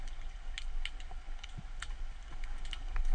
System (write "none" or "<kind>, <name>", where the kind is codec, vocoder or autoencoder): none